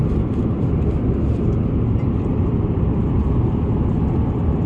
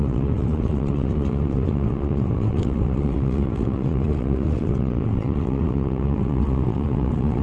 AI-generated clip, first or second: second